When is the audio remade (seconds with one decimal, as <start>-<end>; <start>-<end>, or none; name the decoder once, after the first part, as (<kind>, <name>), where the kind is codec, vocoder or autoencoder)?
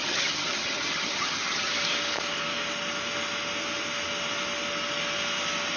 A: 0.0-1.7 (vocoder, HiFi-GAN)